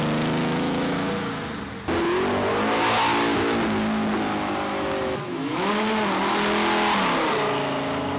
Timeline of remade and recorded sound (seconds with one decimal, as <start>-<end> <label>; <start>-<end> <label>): 0.0-0.4 recorded; 0.4-1.1 remade; 1.1-4.7 recorded; 4.7-5.7 remade; 5.7-8.2 recorded